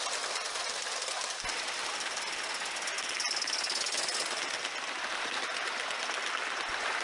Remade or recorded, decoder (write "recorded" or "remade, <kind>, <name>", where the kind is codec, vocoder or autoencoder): recorded